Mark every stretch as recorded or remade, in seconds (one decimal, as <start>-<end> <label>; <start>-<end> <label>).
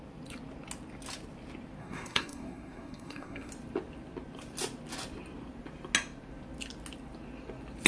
0.0-1.8 recorded; 1.8-3.5 remade; 3.5-7.9 recorded